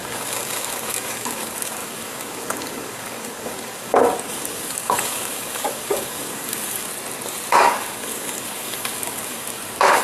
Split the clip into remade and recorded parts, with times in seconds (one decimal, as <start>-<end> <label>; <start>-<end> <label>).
0.0-6.9 remade; 6.9-7.5 recorded; 7.5-10.0 remade